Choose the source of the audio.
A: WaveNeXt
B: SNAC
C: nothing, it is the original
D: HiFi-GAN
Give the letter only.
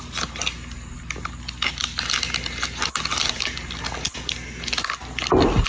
C